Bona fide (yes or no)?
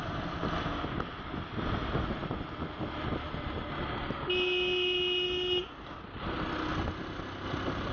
yes